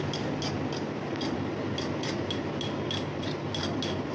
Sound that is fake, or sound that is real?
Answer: real